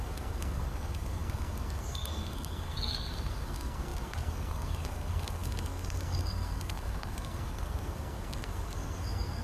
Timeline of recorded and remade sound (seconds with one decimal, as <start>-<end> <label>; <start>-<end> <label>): 0.0-9.4 remade